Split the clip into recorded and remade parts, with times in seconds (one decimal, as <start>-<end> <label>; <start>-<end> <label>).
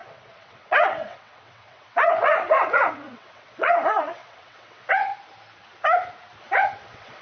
0.0-5.1 remade; 5.1-6.4 recorded; 6.4-7.2 remade